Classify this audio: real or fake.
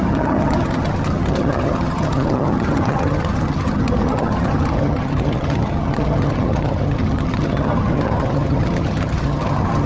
fake